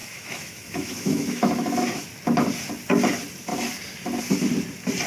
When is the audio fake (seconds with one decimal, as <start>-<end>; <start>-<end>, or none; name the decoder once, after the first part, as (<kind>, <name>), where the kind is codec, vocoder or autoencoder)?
0.0-2.1 (autoencoder, DAC-VAE)